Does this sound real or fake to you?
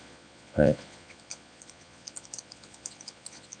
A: fake